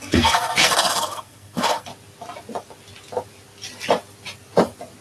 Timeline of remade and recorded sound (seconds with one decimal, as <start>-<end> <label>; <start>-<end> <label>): 0.0-1.9 remade; 1.9-5.0 recorded